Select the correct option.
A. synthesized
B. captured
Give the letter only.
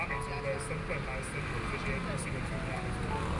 B